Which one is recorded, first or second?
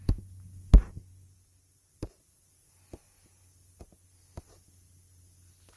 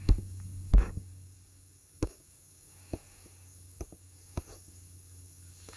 first